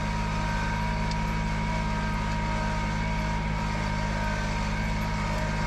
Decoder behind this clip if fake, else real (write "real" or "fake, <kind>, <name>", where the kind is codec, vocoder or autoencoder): real